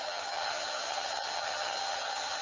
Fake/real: fake